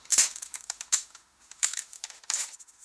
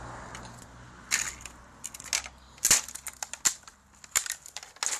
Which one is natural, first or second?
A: second